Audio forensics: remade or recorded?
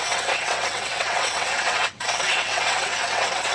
remade